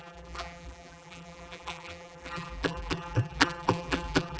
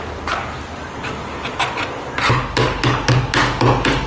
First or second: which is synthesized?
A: first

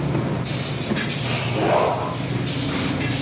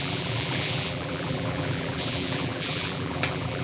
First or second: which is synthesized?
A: second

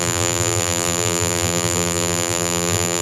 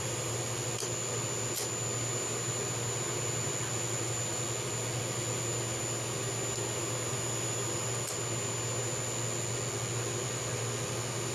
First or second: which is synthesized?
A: first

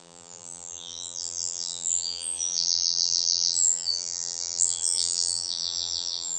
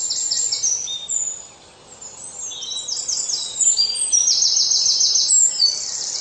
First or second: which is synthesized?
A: first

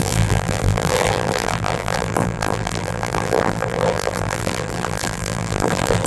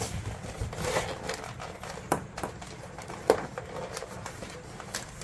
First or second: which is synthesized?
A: first